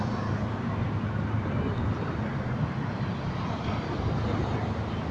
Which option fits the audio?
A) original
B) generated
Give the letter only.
A